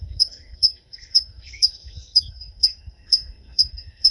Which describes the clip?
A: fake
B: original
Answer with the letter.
A